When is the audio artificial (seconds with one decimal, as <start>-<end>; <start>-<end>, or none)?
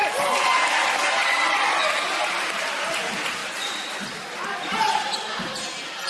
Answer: none